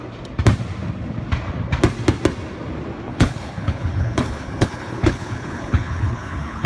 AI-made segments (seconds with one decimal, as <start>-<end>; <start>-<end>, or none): 3.1-6.7